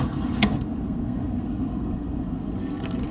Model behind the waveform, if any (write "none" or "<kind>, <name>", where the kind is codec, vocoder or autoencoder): codec, SNAC